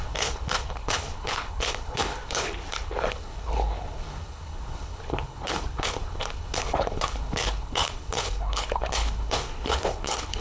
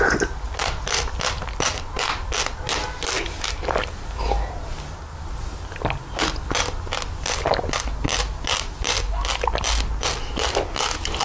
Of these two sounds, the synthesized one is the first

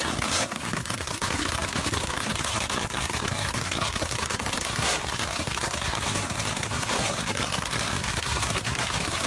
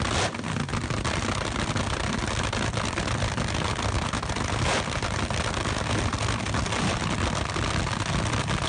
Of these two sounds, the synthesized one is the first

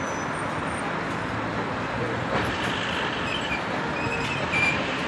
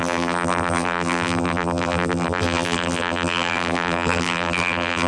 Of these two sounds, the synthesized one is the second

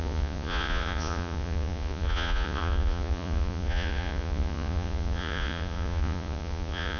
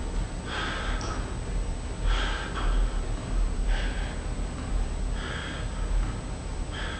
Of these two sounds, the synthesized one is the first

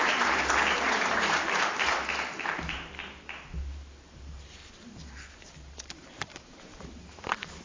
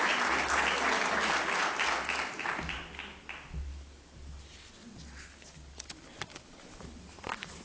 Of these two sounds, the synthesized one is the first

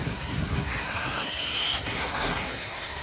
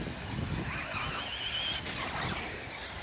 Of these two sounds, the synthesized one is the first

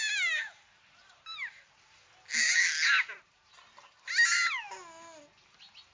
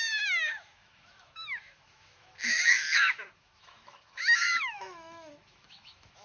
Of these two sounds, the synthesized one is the second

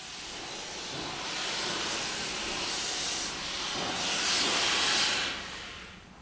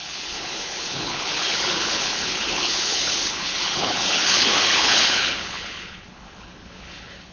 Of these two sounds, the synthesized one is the second